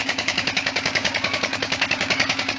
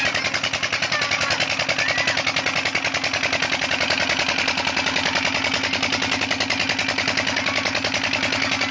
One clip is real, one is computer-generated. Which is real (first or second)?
second